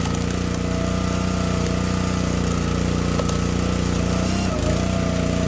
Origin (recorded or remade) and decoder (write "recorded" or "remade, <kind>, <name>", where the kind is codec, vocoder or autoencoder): recorded